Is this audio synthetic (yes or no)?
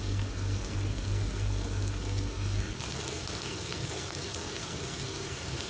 yes